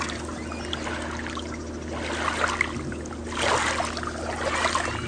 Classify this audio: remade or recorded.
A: recorded